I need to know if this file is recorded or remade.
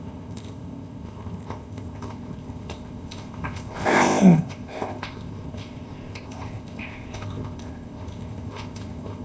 remade